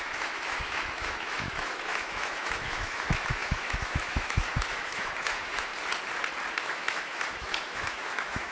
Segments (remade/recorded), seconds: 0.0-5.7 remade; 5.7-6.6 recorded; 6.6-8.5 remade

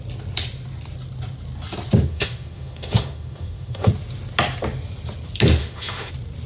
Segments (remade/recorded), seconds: 0.0-2.1 recorded; 2.1-3.9 remade; 3.9-5.6 recorded; 5.6-6.1 remade; 6.1-6.5 recorded

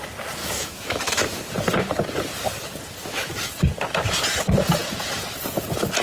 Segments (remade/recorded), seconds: 0.0-0.4 recorded; 0.4-1.4 remade; 1.4-3.0 recorded; 3.0-3.5 remade; 3.5-6.0 recorded

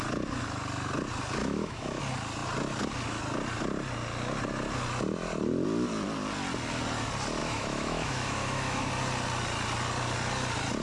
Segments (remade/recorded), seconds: 0.0-1.4 recorded; 1.4-2.0 remade; 2.0-7.4 recorded; 7.4-8.9 remade; 8.9-10.8 recorded

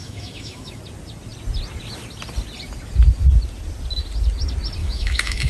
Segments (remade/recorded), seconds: 0.0-0.8 remade; 0.8-4.8 recorded; 4.8-5.5 remade